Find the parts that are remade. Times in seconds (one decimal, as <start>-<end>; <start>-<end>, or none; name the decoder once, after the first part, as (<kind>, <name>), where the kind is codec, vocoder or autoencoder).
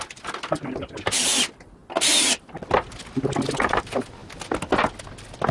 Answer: none